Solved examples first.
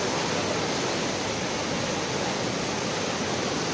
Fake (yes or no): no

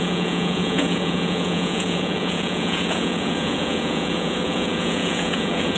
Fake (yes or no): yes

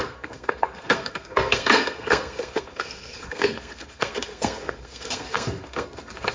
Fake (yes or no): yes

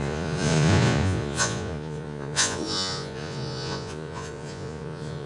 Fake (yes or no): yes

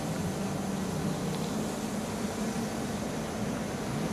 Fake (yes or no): no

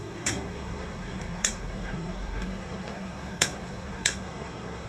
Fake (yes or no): yes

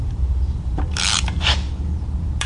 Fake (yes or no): yes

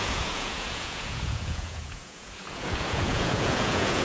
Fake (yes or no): yes